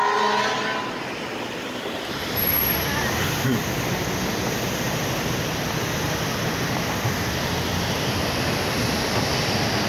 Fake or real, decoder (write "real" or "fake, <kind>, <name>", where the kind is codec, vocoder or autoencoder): real